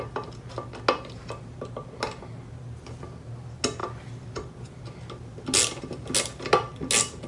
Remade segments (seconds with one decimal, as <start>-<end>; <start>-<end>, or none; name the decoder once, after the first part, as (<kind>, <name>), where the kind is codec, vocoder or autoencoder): none